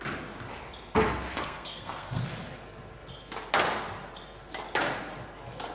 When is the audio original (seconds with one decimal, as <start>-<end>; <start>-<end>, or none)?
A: 0.0-1.3; 2.2-5.7